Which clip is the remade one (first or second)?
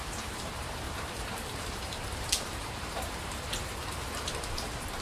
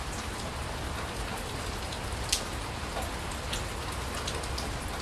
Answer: first